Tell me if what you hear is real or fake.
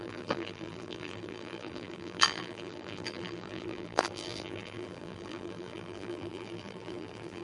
fake